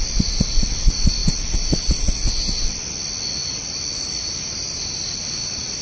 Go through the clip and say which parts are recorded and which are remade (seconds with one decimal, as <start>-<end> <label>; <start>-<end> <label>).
0.0-5.8 recorded